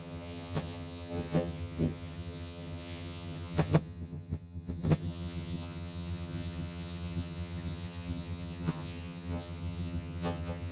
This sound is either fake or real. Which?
fake